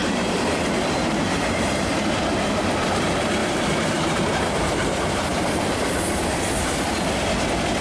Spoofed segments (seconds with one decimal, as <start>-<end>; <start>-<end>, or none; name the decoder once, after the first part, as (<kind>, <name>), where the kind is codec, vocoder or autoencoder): 0.0-2.1 (vocoder, BigVGAN v2); 3.4-5.7